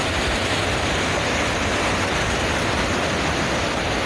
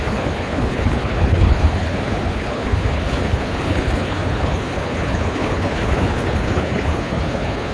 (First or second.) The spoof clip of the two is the second